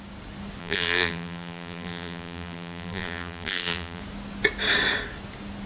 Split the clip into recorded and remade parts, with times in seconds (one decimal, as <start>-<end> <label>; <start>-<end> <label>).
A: 0.0-0.6 recorded; 0.6-4.0 remade; 4.0-5.7 recorded